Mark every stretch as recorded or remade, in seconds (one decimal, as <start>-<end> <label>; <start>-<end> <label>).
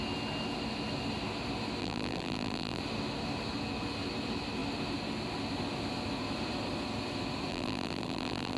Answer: 0.0-1.8 recorded; 1.8-2.8 remade; 2.8-7.5 recorded; 7.5-8.6 remade